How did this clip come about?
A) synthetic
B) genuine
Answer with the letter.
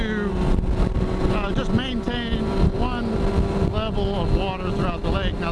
B